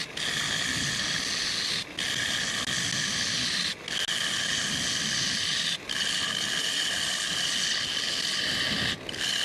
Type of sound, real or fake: real